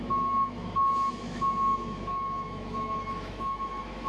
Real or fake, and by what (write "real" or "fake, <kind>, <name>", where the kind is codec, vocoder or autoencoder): fake, autoencoder, DAC-VAE